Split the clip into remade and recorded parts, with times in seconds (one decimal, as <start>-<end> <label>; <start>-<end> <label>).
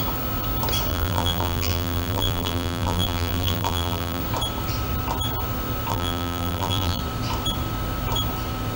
0.0-0.9 recorded; 0.9-4.2 remade; 4.2-5.9 recorded; 5.9-7.0 remade; 7.0-8.8 recorded